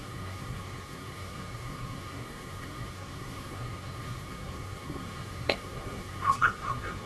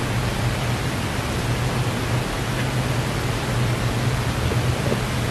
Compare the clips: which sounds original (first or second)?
second